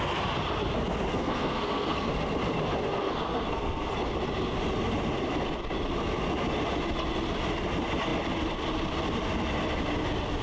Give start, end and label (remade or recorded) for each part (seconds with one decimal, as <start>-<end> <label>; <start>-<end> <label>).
0.0-1.1 recorded; 1.1-2.1 remade; 2.1-3.0 recorded; 3.0-3.9 remade; 3.9-10.4 recorded